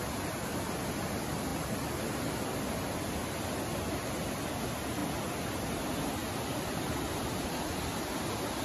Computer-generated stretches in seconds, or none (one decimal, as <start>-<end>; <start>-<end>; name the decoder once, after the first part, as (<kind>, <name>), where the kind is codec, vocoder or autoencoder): none